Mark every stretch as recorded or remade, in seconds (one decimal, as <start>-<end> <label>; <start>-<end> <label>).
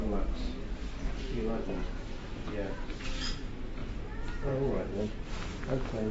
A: 0.0-3.8 recorded; 3.8-5.2 remade; 5.2-6.1 recorded